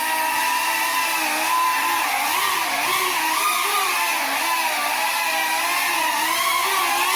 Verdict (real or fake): real